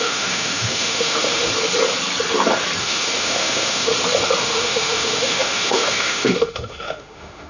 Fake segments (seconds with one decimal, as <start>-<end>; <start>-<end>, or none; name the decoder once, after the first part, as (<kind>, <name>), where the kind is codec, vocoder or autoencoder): 0.0-1.5 (autoencoder, DAC-VAE); 2.8-3.9; 4.4-7.5